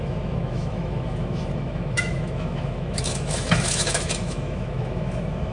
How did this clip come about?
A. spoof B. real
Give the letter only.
A